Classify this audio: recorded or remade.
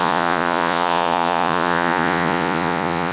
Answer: remade